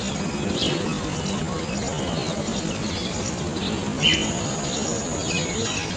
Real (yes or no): yes